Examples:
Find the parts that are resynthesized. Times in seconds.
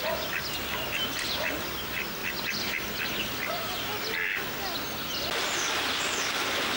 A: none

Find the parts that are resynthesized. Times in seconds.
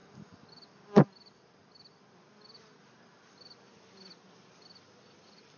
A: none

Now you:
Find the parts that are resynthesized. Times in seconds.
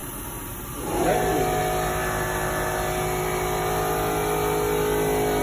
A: none